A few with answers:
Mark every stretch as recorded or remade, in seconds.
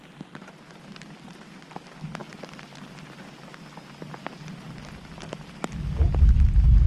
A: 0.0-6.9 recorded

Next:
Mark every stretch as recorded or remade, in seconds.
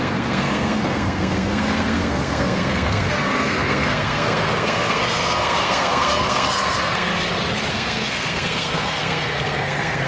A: 0.0-7.1 remade; 7.1-7.7 recorded; 7.7-10.1 remade